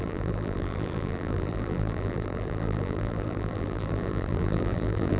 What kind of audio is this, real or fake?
fake